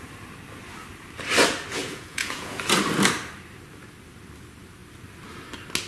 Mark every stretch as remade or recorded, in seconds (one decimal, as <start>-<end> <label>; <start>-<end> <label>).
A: 0.0-1.8 recorded; 1.8-2.6 remade; 2.6-5.9 recorded